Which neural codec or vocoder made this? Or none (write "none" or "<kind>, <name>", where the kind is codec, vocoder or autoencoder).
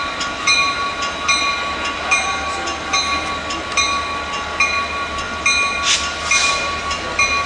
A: none